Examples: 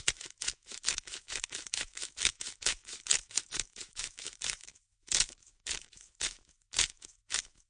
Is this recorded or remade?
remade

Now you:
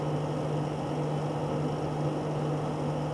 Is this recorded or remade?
recorded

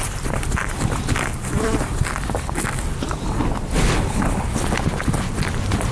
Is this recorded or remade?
recorded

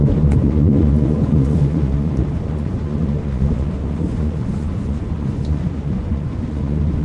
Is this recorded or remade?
remade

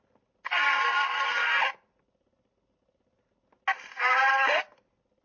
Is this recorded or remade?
recorded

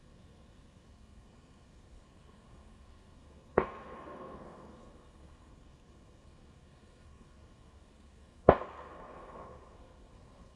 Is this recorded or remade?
remade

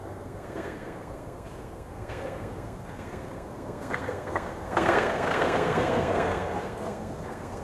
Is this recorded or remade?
remade